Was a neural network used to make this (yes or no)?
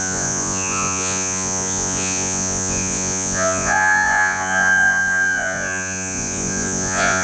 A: yes